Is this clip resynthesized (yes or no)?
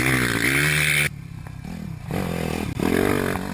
no